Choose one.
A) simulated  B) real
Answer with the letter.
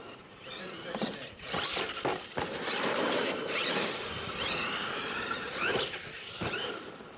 A